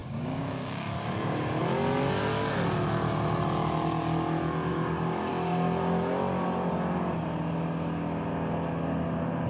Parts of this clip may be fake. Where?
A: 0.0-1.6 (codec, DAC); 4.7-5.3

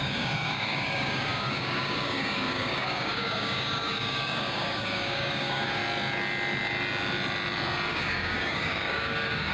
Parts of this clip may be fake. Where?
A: 0.0-5.8 (codec, DAC); 7.9-9.5

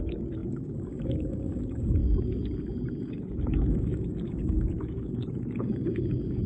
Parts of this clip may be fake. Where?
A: 0.0-2.0 (codec, DAC); 3.0-6.5

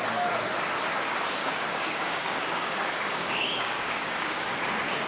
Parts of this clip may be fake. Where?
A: 1.4-4.5 (codec, DAC)

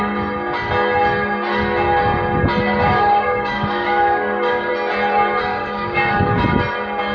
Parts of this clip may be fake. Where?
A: 2.8-4.7 (codec, DAC); 5.5-6.4

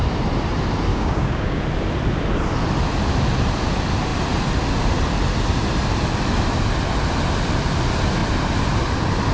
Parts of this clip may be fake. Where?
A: 0.9-1.6 (codec, DAC)

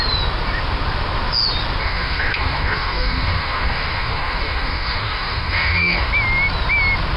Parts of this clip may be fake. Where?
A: 1.8-6.1 (codec, DAC)